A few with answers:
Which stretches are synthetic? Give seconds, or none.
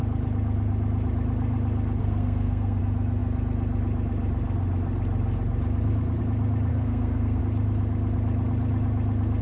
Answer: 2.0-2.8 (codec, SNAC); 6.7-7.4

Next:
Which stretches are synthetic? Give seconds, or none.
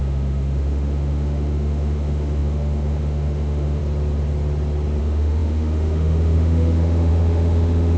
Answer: 0.0-3.8 (autoencoder, DAC-VAE); 5.0-8.0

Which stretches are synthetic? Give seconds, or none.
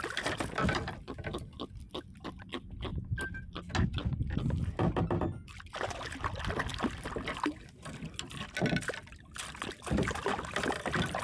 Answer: 0.0-2.9 (vocoder, BigVGAN v2); 5.0-11.2